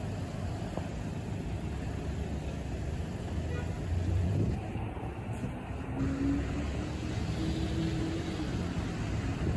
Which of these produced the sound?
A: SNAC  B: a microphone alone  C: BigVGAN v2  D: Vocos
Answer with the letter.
B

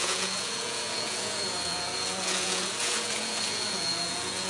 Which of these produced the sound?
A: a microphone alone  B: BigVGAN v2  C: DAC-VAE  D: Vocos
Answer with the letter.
D